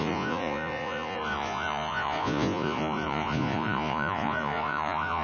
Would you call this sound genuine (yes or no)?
no